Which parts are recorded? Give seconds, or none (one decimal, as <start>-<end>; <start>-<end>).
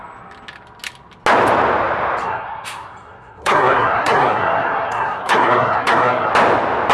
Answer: 0.0-2.2; 6.3-6.9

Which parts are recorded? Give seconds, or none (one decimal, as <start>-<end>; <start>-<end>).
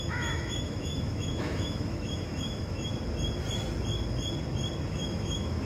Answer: 2.9-4.9